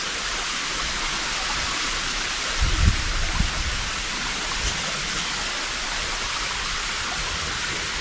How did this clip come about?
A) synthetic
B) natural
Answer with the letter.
B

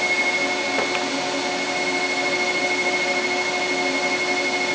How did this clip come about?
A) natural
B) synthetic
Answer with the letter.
A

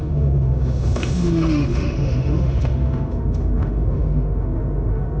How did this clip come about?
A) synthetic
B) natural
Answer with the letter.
A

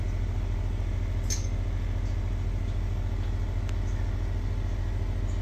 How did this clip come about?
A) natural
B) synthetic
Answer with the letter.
A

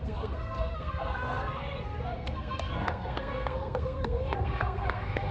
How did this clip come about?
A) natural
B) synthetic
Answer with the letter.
B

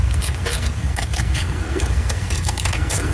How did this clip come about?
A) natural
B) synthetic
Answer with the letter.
B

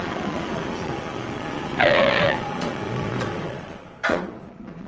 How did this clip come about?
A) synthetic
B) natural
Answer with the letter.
A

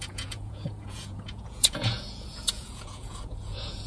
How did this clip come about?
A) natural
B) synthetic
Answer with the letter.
B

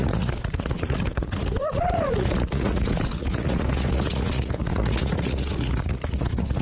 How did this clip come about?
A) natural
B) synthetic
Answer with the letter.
B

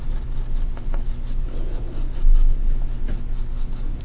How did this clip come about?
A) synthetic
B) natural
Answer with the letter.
B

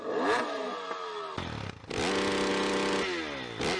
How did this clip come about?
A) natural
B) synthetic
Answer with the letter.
A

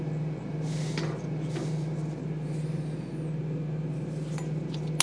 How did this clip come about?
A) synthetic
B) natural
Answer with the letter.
B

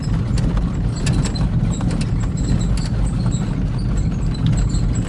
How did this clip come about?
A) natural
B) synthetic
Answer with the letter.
A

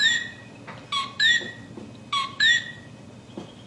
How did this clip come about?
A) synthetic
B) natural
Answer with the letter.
B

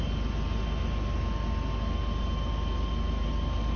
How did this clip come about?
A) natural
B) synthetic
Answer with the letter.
A